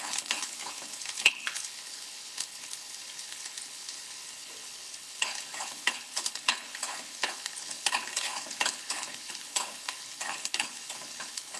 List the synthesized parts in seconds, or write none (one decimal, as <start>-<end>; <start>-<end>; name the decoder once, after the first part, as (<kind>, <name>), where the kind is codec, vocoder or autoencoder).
0.0-11.6 (codec, HILCodec)